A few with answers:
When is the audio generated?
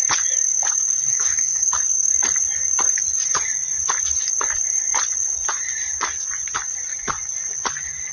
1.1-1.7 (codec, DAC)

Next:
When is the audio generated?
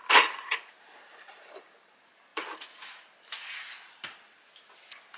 0.0-0.7 (vocoder, Vocos); 2.3-3.1